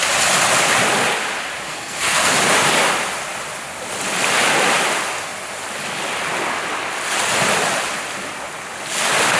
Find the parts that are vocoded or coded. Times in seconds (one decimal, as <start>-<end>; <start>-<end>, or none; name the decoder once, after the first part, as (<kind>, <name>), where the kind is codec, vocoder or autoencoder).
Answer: 1.7-2.3 (codec, SNAC)